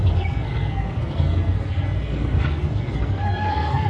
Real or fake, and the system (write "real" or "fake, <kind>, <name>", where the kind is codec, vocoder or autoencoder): fake, codec, SNAC